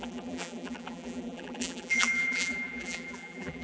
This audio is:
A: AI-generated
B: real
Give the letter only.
A